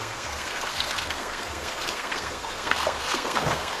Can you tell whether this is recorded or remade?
remade